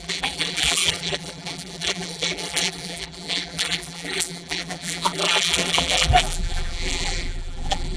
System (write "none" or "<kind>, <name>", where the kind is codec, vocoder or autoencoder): vocoder, BigVGAN v2